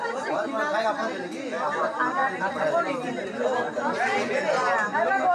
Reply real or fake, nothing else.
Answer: real